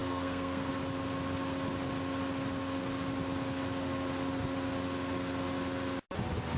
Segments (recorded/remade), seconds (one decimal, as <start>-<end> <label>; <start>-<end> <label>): 0.0-0.7 remade; 0.7-6.6 recorded